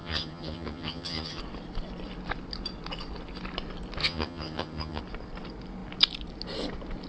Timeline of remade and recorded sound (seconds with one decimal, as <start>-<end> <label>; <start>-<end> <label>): 0.0-1.4 remade; 1.4-4.0 recorded; 4.0-5.0 remade; 5.0-7.1 recorded